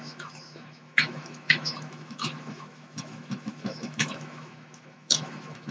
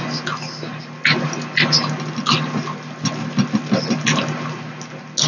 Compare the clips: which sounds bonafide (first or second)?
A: second